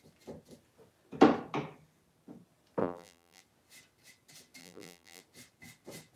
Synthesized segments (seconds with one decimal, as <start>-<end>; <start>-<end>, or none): 2.8-3.4; 4.6-5.2